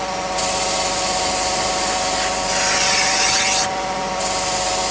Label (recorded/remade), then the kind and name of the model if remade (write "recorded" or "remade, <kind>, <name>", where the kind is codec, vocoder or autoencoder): recorded